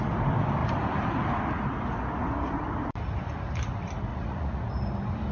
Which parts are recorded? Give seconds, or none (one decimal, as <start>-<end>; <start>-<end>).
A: 0.0-4.1; 4.6-5.3